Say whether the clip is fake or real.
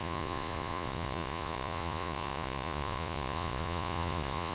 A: fake